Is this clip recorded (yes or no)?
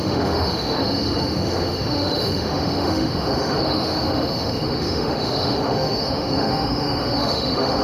no